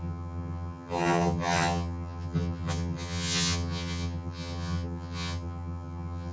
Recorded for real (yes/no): no